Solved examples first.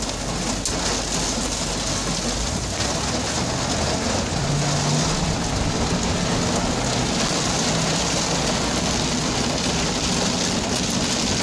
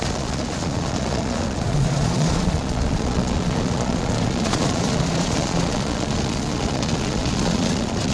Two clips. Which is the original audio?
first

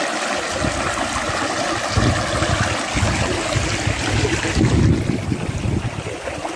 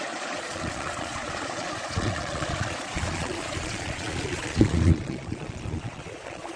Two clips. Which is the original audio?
first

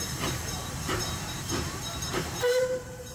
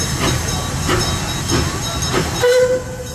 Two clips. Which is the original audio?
second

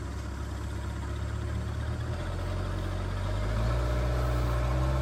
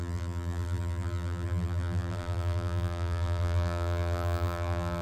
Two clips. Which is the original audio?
first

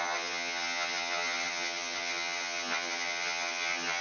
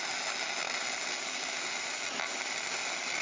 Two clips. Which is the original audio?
second